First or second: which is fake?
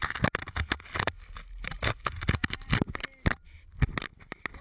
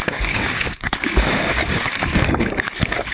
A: second